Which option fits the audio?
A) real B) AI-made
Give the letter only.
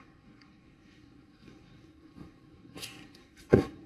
B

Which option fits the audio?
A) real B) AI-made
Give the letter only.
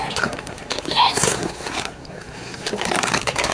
B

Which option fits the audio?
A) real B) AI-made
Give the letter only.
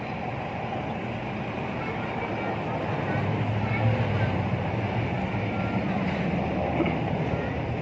A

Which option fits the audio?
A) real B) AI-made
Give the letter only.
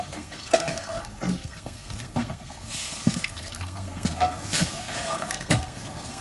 B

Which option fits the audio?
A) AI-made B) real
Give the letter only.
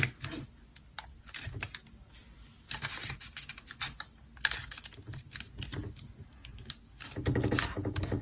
B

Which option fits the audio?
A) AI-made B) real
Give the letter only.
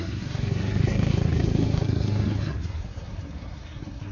A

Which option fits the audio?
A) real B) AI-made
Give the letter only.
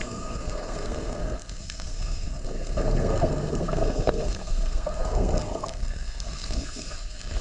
B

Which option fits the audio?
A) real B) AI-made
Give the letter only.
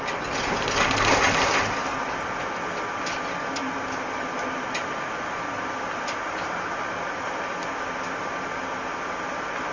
A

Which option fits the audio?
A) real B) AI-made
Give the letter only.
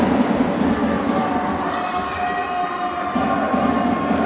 A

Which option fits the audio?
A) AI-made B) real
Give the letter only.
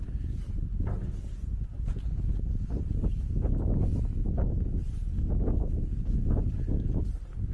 B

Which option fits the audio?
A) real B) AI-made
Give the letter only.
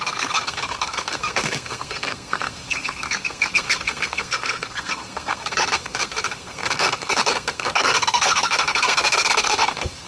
B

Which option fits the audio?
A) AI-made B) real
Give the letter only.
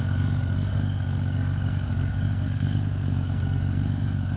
A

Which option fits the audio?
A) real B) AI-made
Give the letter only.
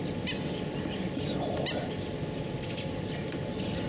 A